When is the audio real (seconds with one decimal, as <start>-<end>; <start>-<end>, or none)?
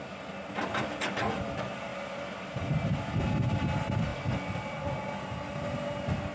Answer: 0.0-6.3